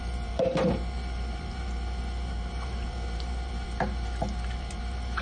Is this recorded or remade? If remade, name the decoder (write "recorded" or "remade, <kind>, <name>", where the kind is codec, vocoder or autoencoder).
remade, vocoder, BigVGAN v2